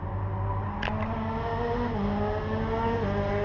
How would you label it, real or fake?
real